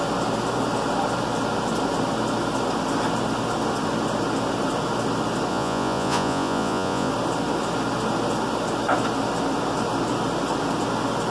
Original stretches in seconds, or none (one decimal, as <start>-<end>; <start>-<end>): 0.0-5.5; 7.1-11.3